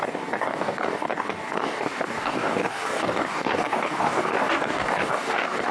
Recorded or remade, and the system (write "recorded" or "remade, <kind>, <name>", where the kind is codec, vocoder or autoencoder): remade, codec, DAC